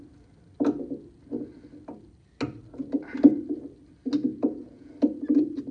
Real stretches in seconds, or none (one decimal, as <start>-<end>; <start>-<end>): 0.0-4.3; 4.9-5.7